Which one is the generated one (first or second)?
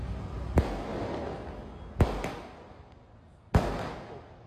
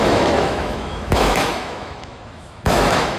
second